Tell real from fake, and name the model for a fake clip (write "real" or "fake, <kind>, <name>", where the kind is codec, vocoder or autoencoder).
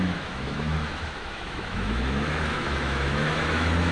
fake, autoencoder, DAC-VAE